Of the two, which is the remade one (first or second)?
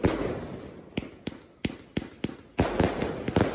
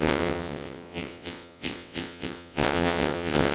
second